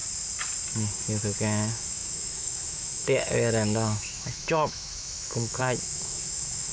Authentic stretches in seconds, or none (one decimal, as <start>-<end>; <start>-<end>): 0.0-1.4